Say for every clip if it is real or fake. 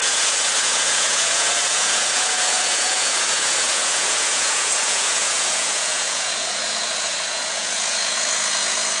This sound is fake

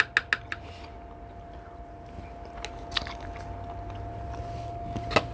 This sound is real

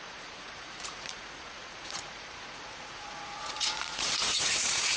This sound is fake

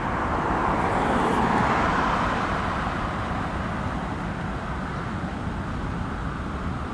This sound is real